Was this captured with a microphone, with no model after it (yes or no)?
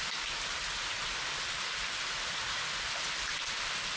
yes